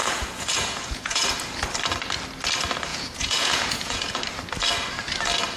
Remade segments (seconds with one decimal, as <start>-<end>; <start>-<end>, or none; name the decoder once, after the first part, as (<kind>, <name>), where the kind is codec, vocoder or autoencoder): 0.0-1.3 (vocoder, Vocos); 2.9-4.2